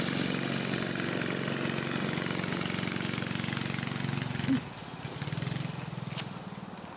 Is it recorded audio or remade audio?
recorded